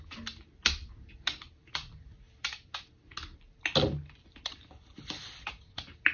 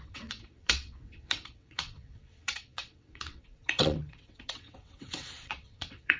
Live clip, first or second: first